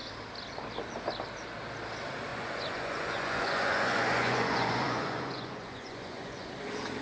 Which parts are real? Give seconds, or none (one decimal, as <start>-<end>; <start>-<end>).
0.0-2.3; 6.5-7.0